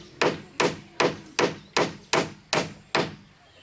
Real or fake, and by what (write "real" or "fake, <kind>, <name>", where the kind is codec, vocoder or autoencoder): real